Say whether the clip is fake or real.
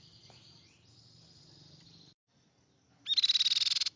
real